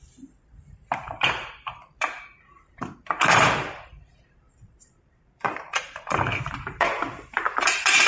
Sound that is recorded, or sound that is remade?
remade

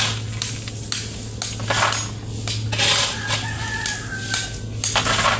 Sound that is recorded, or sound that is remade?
recorded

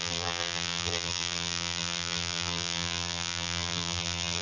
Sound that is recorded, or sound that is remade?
remade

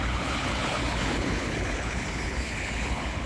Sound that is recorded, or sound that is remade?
remade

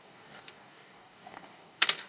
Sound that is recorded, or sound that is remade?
remade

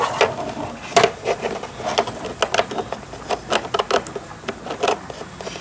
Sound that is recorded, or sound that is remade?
recorded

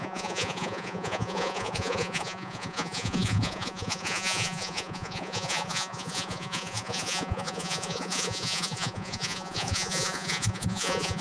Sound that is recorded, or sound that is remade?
remade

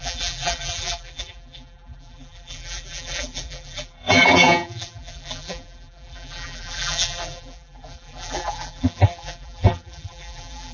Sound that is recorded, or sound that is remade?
remade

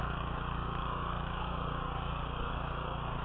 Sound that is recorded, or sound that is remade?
remade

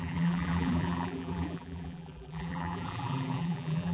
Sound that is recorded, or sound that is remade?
remade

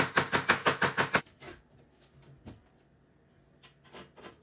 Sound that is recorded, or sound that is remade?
recorded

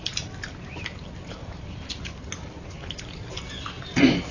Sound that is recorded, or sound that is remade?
recorded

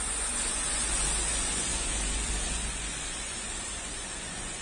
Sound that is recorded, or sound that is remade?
remade